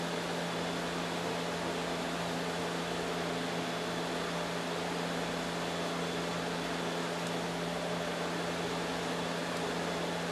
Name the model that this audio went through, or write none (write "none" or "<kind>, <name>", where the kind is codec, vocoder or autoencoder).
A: none